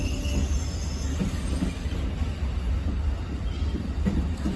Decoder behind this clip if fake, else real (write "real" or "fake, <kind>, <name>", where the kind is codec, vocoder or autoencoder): real